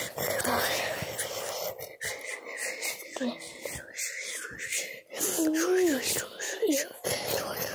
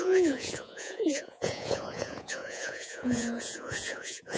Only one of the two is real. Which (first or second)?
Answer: first